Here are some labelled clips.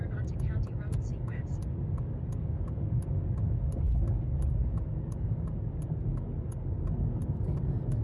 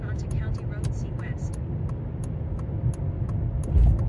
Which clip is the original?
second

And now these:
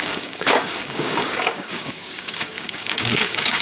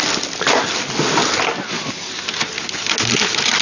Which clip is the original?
second